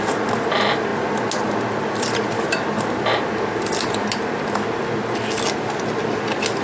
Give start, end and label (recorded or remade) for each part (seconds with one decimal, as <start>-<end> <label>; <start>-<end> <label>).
0.0-6.6 recorded